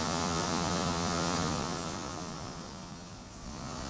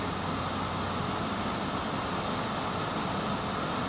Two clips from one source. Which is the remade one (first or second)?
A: first